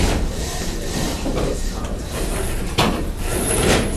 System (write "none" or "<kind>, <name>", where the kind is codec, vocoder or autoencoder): vocoder, BigVGAN v2